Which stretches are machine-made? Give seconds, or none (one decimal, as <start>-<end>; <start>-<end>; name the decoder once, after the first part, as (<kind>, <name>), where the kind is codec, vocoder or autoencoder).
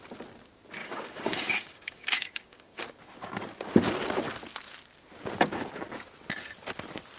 0.8-2.8 (codec, DAC)